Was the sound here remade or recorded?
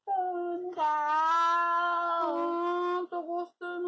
recorded